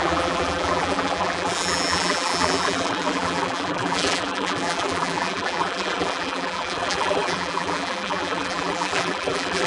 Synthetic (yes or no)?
yes